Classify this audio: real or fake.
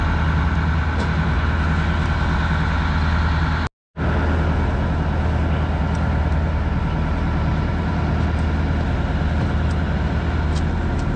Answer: real